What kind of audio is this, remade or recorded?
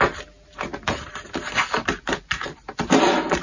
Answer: recorded